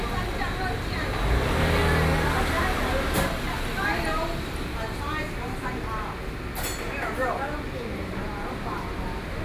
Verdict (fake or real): real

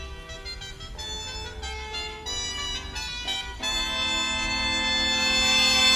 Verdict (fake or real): real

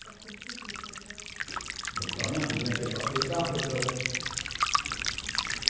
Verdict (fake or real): real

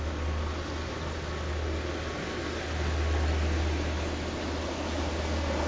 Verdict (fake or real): real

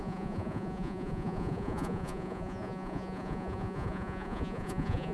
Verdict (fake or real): fake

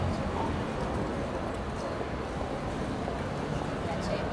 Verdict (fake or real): real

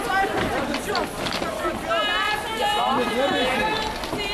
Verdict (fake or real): real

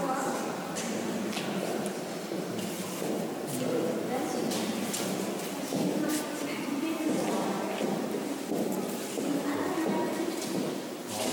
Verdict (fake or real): real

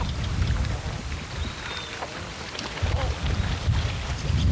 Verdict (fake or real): real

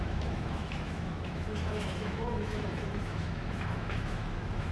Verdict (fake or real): fake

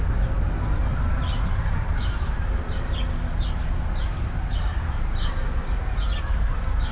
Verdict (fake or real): real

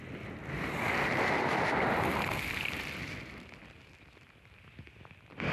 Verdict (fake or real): real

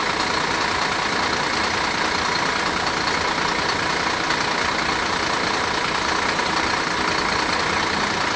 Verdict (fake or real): real